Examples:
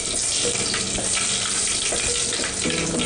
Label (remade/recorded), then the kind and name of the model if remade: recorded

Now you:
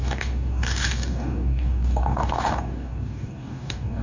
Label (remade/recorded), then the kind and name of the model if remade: remade, codec, DAC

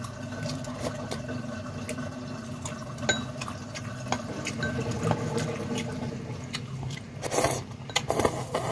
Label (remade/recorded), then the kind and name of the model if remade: recorded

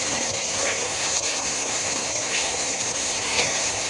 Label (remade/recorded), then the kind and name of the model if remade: remade, codec, SNAC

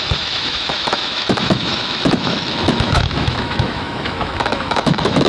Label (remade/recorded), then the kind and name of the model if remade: remade, autoencoder, DAC-VAE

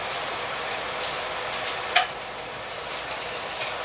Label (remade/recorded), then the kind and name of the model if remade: remade, vocoder, BigVGAN v2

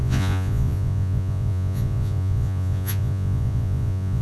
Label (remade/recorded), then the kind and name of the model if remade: remade, vocoder, Vocos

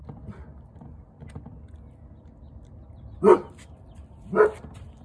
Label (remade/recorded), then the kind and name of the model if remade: recorded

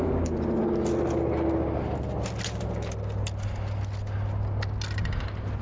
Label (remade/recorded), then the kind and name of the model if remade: recorded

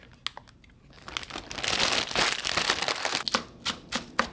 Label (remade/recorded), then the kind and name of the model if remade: recorded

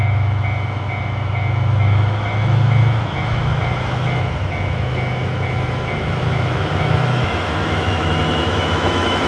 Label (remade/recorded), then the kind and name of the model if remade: remade, autoencoder, DAC-VAE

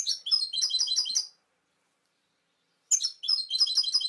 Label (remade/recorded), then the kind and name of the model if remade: recorded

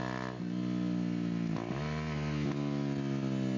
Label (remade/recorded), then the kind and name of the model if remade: recorded